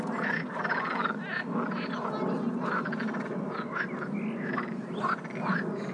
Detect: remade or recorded recorded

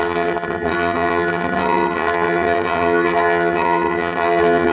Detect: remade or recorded remade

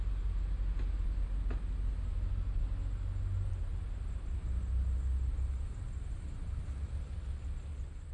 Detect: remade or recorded recorded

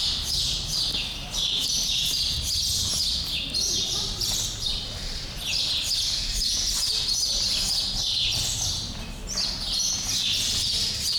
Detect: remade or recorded recorded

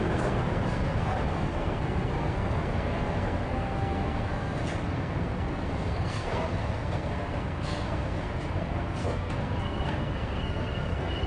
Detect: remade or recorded remade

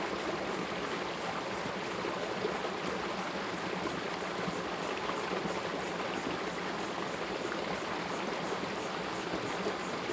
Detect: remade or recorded recorded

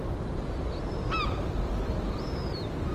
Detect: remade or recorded remade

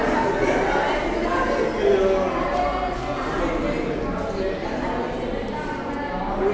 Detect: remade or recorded recorded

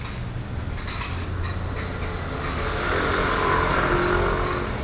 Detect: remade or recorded recorded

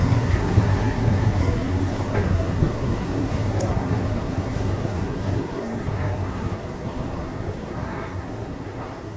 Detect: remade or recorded remade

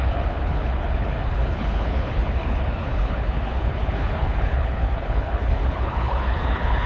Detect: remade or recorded remade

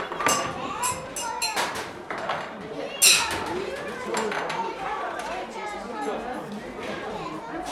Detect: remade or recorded recorded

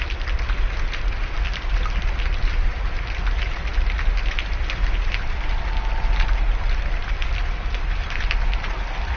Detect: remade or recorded recorded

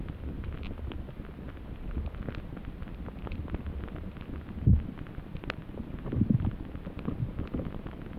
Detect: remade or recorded recorded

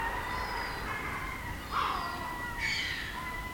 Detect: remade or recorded recorded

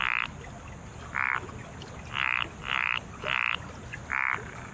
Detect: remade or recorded recorded